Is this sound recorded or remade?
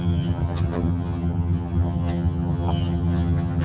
remade